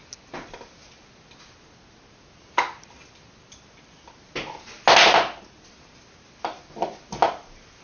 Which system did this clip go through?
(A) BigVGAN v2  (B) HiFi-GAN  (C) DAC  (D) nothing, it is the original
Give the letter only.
D